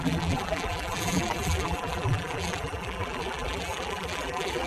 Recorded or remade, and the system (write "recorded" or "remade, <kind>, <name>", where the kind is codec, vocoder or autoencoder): remade, vocoder, BigVGAN v2